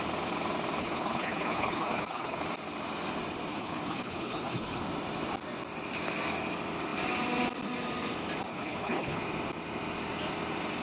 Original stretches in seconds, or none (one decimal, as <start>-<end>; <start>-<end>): 0.0-0.8; 2.4-3.5; 4.8-8.5; 9.2-10.8